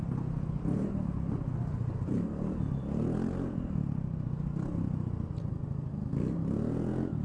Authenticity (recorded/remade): recorded